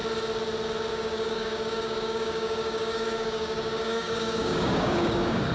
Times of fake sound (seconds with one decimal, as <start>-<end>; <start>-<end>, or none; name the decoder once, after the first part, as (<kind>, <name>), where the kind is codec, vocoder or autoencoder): 0.9-5.5 (codec, DAC)